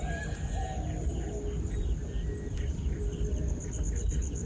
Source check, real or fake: real